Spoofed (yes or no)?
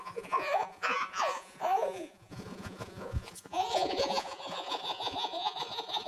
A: yes